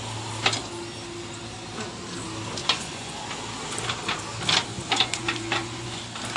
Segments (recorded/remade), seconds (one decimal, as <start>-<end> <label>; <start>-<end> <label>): 0.0-2.6 recorded; 2.6-3.2 remade; 3.2-4.7 recorded; 4.7-6.0 remade; 6.0-6.4 recorded